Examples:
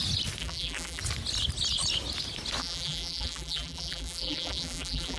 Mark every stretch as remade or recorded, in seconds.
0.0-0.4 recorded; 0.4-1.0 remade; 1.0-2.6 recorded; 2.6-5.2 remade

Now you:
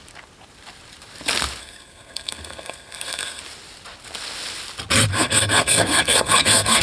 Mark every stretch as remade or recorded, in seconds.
0.0-1.6 recorded; 1.6-3.4 remade; 3.4-5.1 recorded; 5.1-6.8 remade

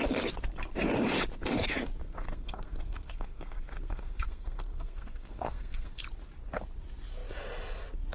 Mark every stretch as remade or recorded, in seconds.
0.0-2.0 recorded; 2.0-6.0 remade; 6.0-8.1 recorded